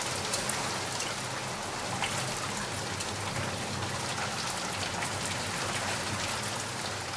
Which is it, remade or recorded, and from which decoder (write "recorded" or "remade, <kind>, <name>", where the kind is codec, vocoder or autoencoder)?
recorded